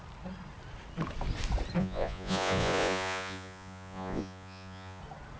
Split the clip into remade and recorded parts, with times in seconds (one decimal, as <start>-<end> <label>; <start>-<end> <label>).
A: 0.0-1.8 recorded; 1.8-5.0 remade; 5.0-5.4 recorded